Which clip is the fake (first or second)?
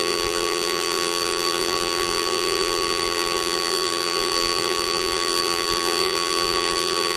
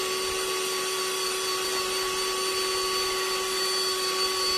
first